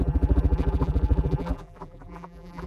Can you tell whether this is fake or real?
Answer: fake